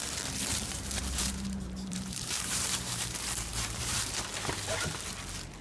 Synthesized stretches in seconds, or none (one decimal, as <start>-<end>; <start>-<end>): 0.5-3.0; 3.5-4.1

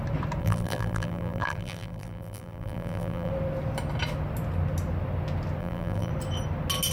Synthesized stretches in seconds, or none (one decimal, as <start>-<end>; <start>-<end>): 0.4-3.3; 5.6-6.1

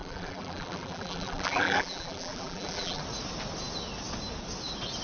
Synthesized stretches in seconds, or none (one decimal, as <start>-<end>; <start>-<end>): 0.0-3.0

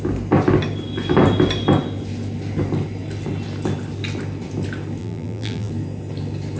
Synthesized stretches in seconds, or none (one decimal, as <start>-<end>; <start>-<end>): 5.0-5.7

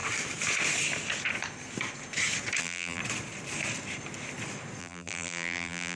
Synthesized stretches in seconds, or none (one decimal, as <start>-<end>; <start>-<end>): 2.6-3.0; 4.8-6.0